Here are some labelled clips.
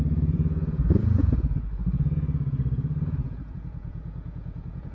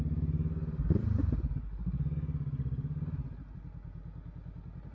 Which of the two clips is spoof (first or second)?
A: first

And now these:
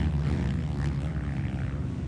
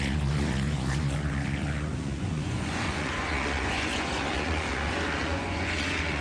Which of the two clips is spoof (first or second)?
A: second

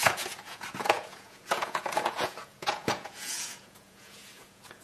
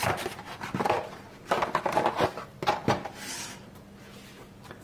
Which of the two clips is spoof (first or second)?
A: first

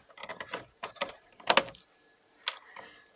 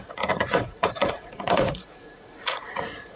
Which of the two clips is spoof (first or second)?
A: second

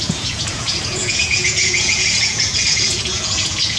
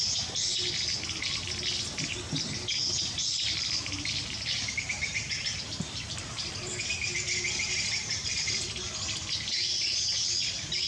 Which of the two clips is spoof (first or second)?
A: first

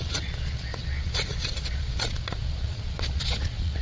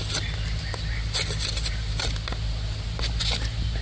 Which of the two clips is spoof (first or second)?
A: first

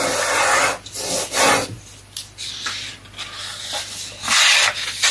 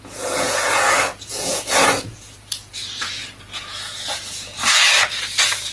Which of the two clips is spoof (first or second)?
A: second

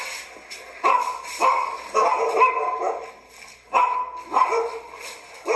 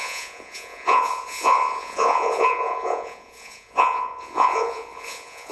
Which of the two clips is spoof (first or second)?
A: second